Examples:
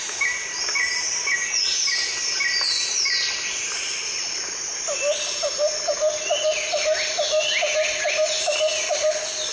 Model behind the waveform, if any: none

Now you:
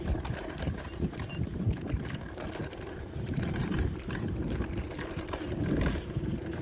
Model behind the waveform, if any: vocoder, BigVGAN v2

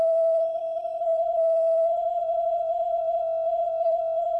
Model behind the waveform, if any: codec, SNAC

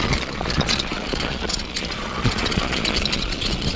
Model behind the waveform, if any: vocoder, Vocos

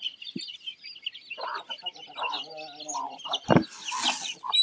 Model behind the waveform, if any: none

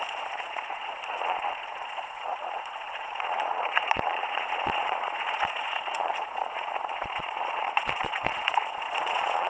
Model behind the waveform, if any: vocoder, Vocos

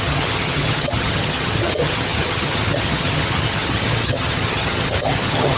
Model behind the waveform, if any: vocoder, HiFi-GAN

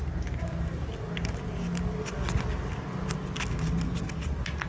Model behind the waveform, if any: none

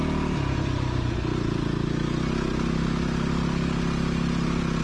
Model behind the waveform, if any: none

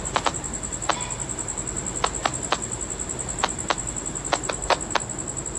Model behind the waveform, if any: none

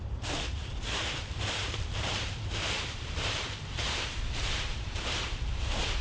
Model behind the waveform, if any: vocoder, BigVGAN v2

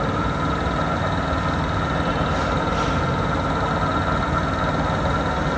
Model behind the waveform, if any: none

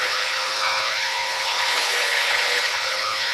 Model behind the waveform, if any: codec, HILCodec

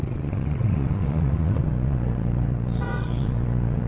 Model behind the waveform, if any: vocoder, Vocos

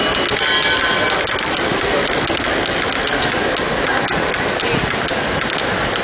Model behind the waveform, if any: none